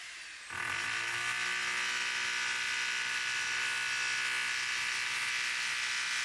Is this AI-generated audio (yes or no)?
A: no